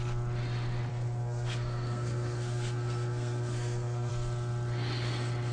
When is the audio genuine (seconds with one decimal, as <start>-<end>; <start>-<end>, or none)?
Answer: 0.0-0.9; 4.1-5.5